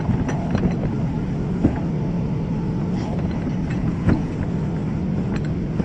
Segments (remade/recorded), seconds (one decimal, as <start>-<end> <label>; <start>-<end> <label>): 0.0-3.7 recorded; 3.7-4.3 remade; 4.3-5.8 recorded